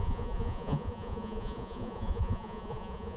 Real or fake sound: fake